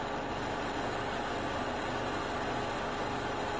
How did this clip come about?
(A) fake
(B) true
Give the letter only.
B